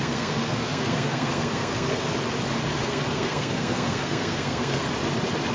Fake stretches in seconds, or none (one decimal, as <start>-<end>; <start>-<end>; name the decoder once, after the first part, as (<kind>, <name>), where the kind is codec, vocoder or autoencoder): 0.0-2.1 (codec, SNAC); 2.7-4.9